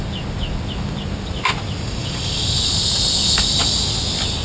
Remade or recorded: recorded